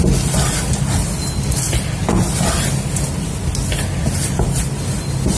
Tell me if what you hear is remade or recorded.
recorded